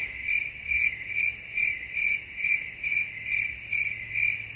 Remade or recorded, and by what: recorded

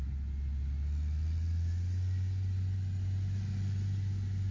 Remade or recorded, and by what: recorded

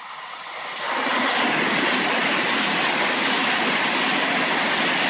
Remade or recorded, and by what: recorded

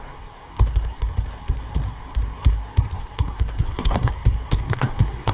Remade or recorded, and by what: remade, codec, SNAC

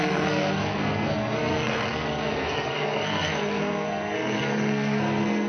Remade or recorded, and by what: remade, codec, SNAC